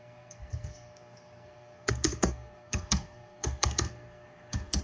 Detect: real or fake fake